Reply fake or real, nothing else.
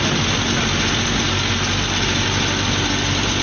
real